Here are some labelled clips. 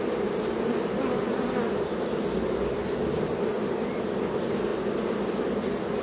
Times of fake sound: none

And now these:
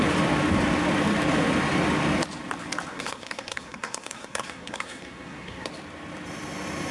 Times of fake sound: 2.9-5.7 (codec, SNAC)

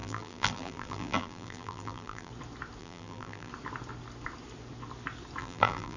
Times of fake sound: 0.0-2.3 (vocoder, BigVGAN v2); 2.8-3.5; 5.4-6.0

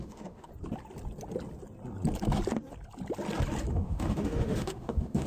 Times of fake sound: 0.0-0.5 (autoencoder, DAC-VAE); 3.7-5.3

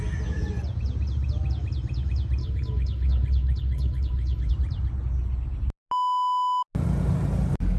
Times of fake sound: 2.4-4.5 (codec, HILCodec)

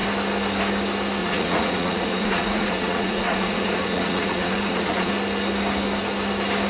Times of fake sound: 1.2-5.1 (vocoder, Vocos)